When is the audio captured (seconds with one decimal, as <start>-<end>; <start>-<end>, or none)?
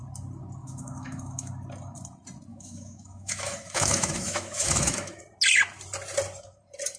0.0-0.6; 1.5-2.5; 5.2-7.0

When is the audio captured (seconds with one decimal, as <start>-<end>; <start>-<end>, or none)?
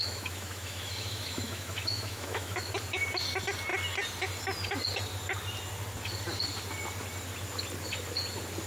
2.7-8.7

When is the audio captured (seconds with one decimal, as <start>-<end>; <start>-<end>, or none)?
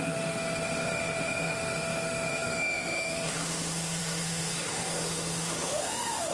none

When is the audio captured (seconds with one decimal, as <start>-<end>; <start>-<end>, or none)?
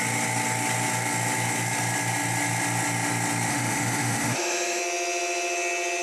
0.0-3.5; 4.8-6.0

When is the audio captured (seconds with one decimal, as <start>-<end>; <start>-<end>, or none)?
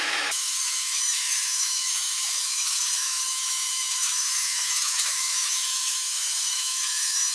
none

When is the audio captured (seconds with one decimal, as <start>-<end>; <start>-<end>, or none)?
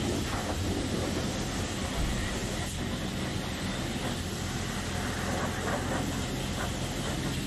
0.0-7.5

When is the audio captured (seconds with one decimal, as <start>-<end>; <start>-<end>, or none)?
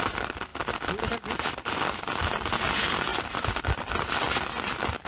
0.0-5.1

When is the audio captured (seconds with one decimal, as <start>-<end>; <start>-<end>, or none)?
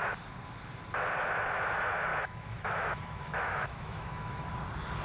0.0-2.1; 4.5-5.0